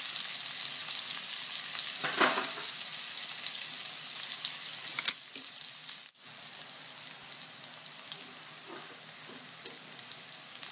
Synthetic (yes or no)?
no